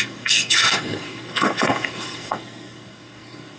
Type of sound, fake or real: fake